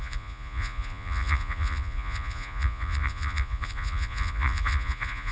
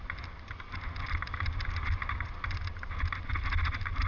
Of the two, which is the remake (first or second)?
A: first